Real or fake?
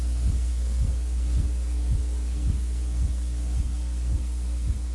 fake